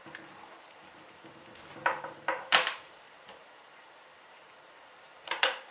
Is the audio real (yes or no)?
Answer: no